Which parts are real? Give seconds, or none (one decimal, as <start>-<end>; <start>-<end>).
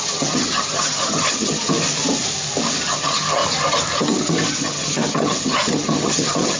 1.7-2.9; 3.4-4.0